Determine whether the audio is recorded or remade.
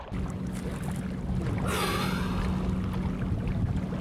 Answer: recorded